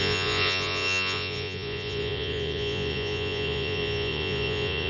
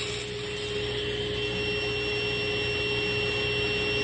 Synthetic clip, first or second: first